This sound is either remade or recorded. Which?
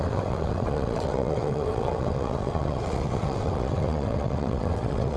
remade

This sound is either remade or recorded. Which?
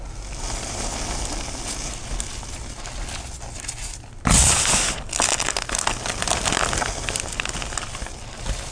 recorded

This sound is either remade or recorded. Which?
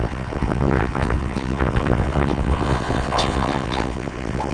remade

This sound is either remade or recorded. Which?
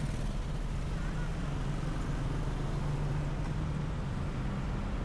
recorded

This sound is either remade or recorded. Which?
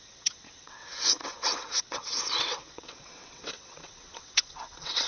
remade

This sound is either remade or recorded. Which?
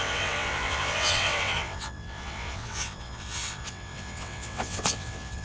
remade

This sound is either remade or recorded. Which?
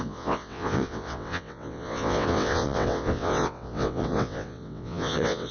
remade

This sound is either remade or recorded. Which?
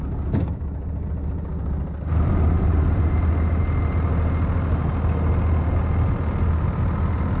recorded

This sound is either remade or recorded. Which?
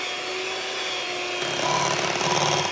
recorded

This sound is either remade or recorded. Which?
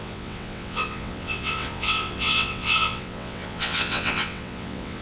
remade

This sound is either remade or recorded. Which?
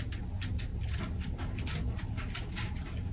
recorded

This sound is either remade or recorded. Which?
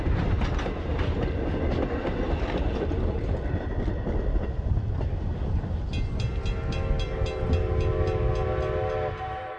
recorded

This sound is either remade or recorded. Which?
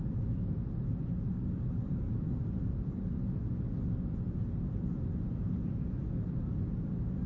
recorded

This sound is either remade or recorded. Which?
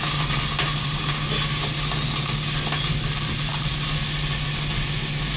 recorded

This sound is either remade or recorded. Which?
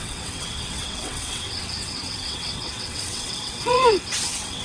remade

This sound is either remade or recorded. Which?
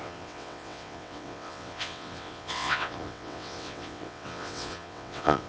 remade